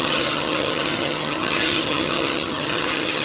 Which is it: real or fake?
fake